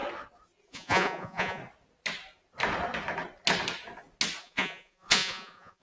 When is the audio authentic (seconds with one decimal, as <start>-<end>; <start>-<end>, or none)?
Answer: 0.0-0.7; 1.6-4.4